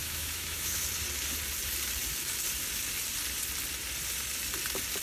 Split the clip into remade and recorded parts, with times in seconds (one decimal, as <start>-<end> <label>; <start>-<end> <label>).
0.0-0.8 remade; 0.8-5.0 recorded